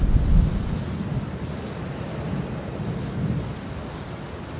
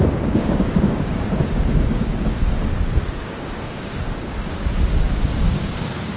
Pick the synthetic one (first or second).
second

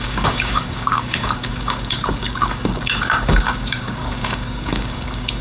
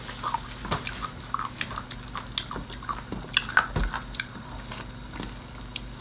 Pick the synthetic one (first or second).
first